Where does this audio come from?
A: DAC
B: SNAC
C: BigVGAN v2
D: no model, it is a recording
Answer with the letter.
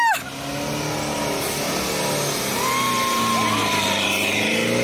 D